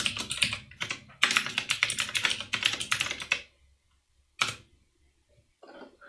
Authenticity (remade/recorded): recorded